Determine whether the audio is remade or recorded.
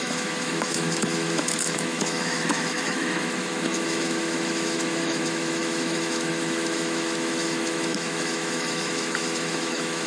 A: remade